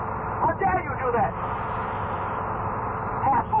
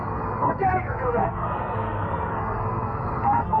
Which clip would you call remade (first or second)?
second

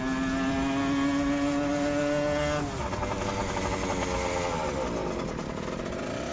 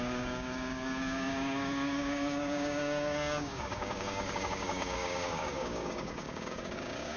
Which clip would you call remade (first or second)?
second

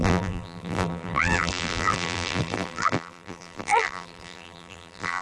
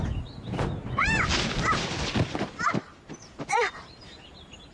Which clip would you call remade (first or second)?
first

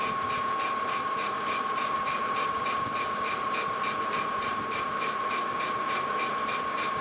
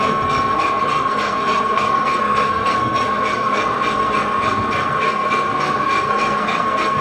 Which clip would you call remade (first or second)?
second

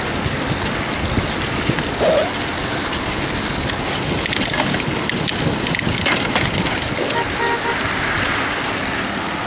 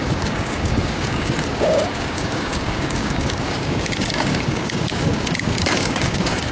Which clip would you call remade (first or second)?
second